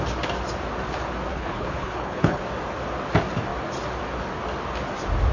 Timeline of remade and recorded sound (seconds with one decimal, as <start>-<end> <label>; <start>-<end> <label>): 0.0-1.3 recorded; 1.3-2.4 remade; 2.4-5.3 recorded